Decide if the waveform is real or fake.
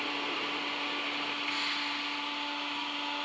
real